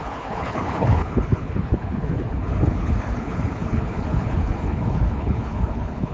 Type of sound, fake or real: fake